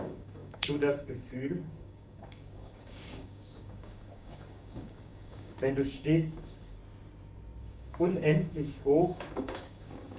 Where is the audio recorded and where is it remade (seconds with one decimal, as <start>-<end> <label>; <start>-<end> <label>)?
0.0-6.8 remade; 6.8-7.6 recorded; 7.6-10.2 remade